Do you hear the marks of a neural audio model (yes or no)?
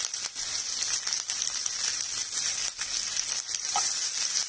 no